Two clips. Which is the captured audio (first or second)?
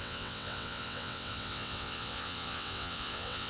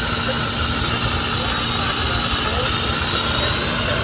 second